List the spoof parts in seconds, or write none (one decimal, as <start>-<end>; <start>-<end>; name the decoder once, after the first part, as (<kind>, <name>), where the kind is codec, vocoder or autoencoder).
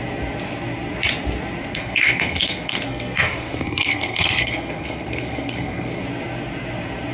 1.7-6.0 (codec, SNAC)